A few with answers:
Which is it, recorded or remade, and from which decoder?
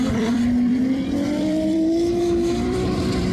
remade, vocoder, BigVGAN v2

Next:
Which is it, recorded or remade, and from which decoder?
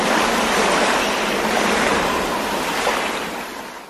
remade, vocoder, BigVGAN v2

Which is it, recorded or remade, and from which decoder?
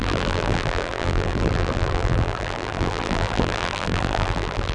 remade, vocoder, BigVGAN v2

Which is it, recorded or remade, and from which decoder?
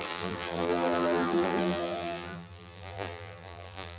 remade, vocoder, BigVGAN v2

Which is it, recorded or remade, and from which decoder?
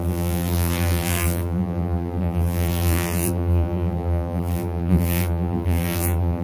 remade, vocoder, BigVGAN v2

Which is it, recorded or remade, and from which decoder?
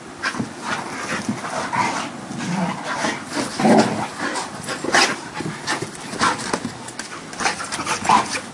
recorded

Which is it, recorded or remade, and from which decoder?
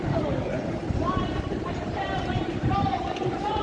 remade, vocoder, BigVGAN v2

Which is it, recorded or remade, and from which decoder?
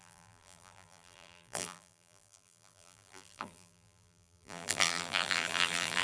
remade, vocoder, BigVGAN v2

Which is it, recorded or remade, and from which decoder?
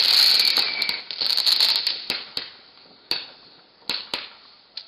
recorded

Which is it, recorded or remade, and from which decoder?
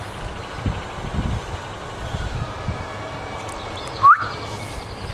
remade, vocoder, BigVGAN v2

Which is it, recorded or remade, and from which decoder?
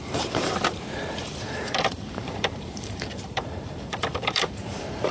remade, vocoder, BigVGAN v2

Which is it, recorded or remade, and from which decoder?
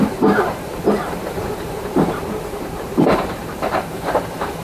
remade, vocoder, BigVGAN v2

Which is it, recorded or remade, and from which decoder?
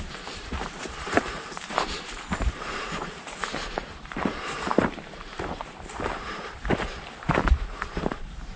remade, vocoder, BigVGAN v2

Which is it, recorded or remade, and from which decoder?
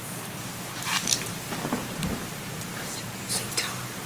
remade, vocoder, BigVGAN v2